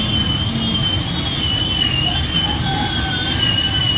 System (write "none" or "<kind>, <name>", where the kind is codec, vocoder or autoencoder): none